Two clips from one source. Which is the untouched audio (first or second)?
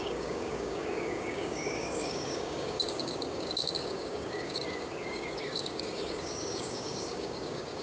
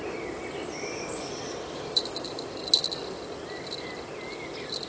second